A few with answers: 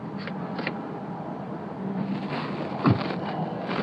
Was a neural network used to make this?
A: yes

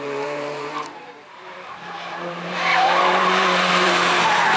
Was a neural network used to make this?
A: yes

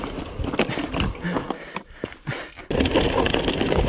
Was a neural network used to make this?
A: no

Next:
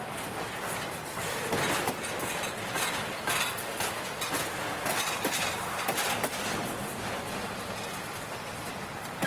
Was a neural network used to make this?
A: no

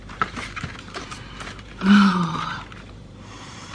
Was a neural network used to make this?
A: yes